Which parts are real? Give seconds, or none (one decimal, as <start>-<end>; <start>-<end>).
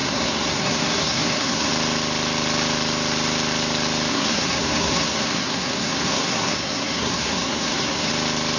1.7-4.1; 8.1-8.6